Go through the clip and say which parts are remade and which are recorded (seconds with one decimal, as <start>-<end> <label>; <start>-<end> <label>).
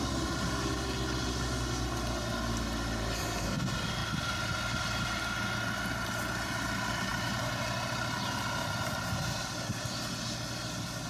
0.0-11.1 recorded